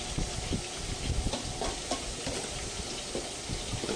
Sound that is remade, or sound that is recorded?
recorded